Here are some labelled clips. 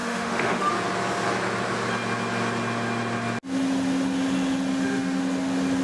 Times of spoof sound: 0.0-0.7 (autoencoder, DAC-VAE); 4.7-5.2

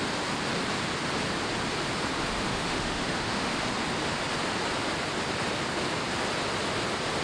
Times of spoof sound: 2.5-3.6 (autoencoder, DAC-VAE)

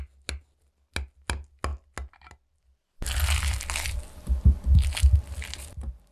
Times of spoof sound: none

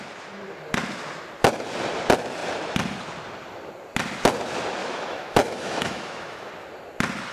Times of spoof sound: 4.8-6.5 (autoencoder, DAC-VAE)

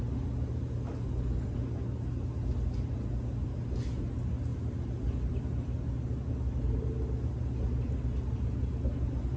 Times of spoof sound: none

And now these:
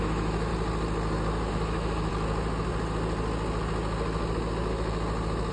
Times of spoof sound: 0.0-0.5 (autoencoder, DAC-VAE); 1.5-2.1